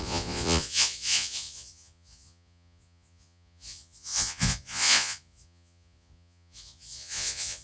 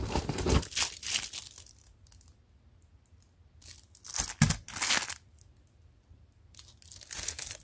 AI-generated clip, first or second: first